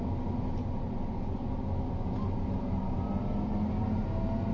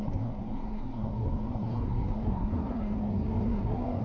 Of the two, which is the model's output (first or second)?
second